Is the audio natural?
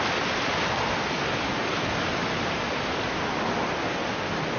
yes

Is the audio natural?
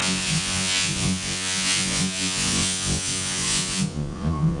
no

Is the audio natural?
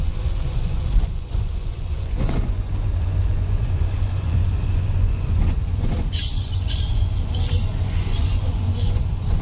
no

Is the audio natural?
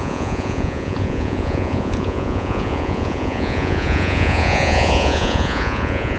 no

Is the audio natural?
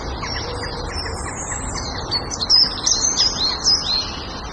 yes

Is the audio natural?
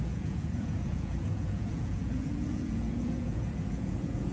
no